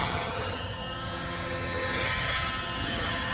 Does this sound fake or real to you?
fake